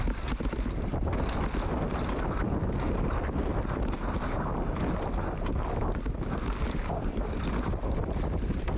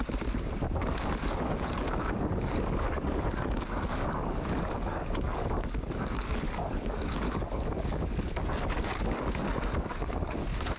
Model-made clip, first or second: second